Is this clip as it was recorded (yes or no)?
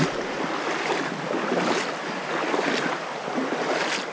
yes